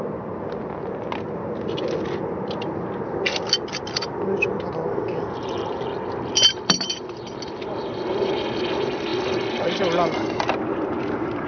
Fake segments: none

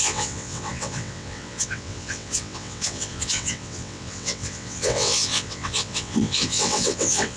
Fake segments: 0.0-7.4 (vocoder, WaveNeXt)

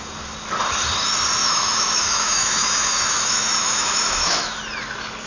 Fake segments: 1.4-4.6 (autoencoder, DAC-VAE)